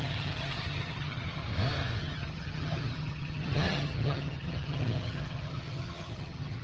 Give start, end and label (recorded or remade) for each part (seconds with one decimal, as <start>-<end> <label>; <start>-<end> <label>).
0.0-1.4 remade; 1.4-2.0 recorded; 2.0-6.6 remade